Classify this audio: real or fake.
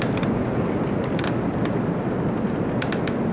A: real